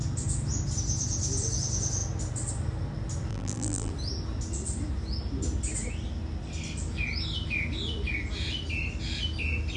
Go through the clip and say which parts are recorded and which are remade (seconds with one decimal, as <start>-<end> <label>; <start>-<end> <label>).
0.0-3.3 recorded; 3.3-3.9 remade; 3.9-9.8 recorded